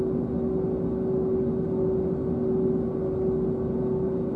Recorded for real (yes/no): yes